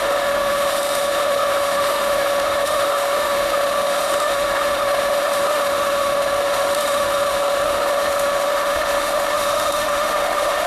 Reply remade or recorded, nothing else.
remade